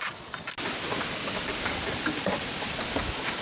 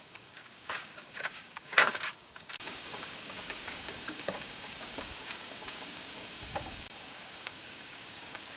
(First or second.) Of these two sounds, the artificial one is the second